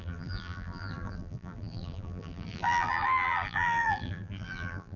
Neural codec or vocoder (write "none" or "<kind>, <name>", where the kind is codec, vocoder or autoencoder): vocoder, BigVGAN v2